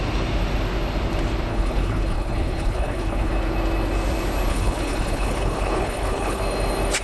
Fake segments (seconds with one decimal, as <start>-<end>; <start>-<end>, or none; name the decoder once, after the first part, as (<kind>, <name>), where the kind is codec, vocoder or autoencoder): 1.5-3.3 (codec, HILCodec); 4.5-6.4